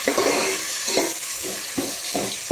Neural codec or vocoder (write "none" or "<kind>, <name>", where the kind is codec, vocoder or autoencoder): codec, DAC